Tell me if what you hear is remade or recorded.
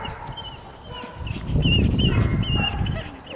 recorded